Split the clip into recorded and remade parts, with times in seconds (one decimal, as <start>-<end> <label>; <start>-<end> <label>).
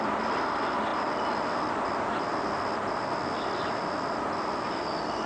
0.0-5.3 recorded